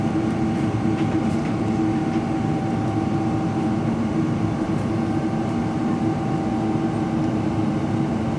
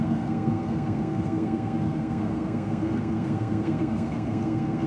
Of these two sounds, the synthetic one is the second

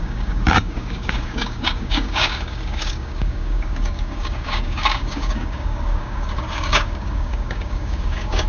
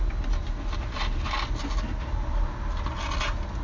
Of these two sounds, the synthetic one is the first